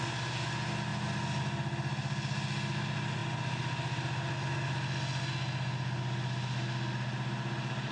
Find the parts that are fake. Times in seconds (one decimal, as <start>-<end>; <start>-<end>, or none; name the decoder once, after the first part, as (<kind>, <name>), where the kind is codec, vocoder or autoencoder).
none